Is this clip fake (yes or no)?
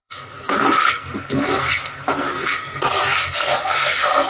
yes